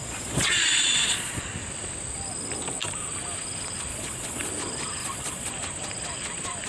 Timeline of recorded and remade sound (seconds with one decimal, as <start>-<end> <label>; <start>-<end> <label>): 0.0-1.4 remade; 1.4-3.9 recorded; 3.9-4.5 remade; 4.5-5.0 recorded; 5.0-5.5 remade; 5.5-6.7 recorded

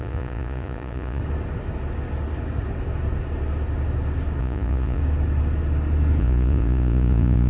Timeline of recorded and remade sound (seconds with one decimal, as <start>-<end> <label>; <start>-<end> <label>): 0.0-1.2 remade; 1.2-4.4 recorded; 4.4-5.0 remade; 5.0-6.2 recorded; 6.2-7.5 remade

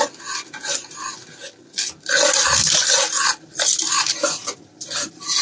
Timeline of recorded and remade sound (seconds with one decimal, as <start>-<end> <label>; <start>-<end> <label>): 0.0-5.4 recorded

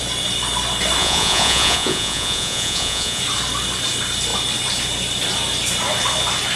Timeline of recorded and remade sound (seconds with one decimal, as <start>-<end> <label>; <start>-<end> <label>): 0.0-1.0 recorded; 1.0-3.2 remade; 3.2-6.6 recorded

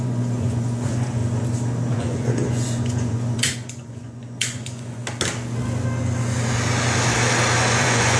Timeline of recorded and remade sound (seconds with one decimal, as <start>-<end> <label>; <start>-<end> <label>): 0.0-1.2 remade; 1.2-1.9 recorded; 1.9-5.0 remade; 5.0-7.6 recorded; 7.6-8.2 remade

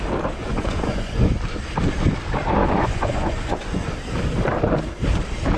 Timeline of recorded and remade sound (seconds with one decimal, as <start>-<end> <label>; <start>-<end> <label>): 0.0-0.4 recorded; 0.4-1.3 remade; 1.3-2.6 recorded; 2.6-3.9 remade; 3.9-5.6 recorded

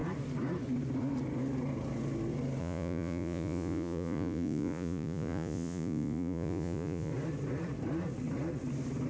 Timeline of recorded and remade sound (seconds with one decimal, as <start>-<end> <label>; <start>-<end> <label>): 0.0-2.6 recorded; 2.6-7.1 remade; 7.1-9.1 recorded

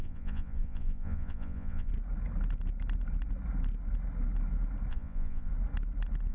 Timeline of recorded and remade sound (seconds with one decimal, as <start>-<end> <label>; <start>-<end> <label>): 0.0-1.9 remade; 1.9-4.9 recorded; 4.9-5.5 remade; 5.5-6.3 recorded